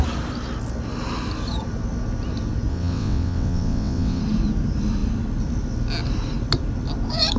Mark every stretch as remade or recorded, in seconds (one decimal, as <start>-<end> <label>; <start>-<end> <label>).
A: 0.0-2.7 recorded; 2.7-4.2 remade; 4.2-7.4 recorded